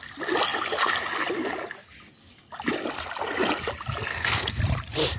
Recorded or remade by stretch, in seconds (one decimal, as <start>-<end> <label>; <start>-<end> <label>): 0.0-4.1 recorded; 4.1-4.6 remade; 4.6-5.2 recorded